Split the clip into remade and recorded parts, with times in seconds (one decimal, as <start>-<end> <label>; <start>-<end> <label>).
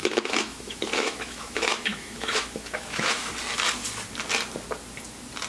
0.0-3.3 remade; 3.3-5.5 recorded